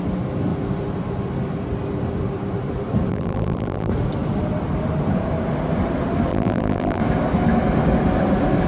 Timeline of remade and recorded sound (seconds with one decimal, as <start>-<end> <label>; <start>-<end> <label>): 0.0-3.1 recorded; 3.1-3.9 remade; 3.9-6.3 recorded; 6.3-7.0 remade; 7.0-8.7 recorded